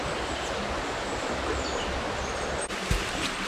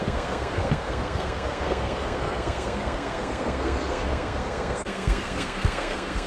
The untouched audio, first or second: first